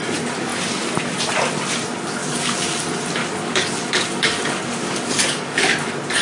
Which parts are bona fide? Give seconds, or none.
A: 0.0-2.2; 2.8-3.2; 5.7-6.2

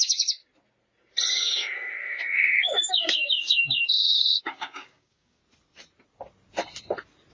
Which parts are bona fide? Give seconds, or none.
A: 0.4-1.3; 5.4-7.3

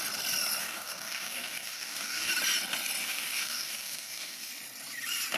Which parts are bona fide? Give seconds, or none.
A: 0.0-0.6; 2.3-3.0; 4.5-5.4

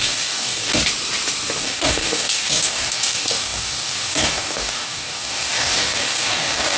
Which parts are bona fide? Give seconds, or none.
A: 0.7-1.6